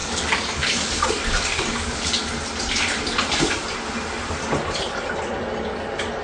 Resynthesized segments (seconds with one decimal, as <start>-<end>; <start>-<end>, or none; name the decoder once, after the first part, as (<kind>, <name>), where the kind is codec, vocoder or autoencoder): 0.0-2.2 (codec, DAC)